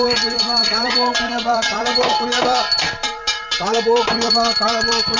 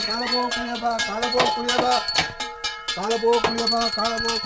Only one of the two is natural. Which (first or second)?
second